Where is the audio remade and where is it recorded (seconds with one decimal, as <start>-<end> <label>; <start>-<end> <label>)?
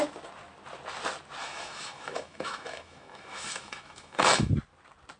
0.0-1.4 recorded; 1.4-4.5 remade; 4.5-5.2 recorded